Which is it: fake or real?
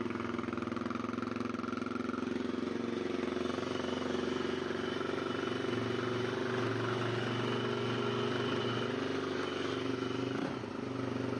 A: real